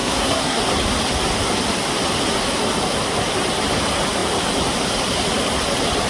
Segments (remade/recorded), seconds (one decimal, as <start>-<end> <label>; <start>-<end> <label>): 0.0-0.6 remade; 0.6-6.1 recorded